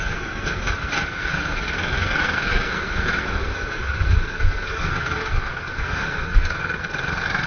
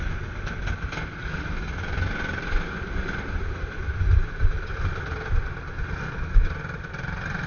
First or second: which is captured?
second